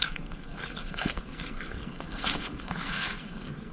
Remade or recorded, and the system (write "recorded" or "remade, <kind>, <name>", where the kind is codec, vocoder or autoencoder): remade, codec, SNAC